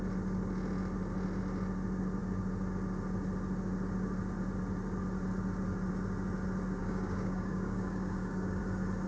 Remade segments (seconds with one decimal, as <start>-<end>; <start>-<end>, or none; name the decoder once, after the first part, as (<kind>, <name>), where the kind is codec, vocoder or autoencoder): 6.8-8.6 (codec, DAC)